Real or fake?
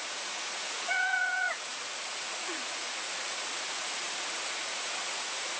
fake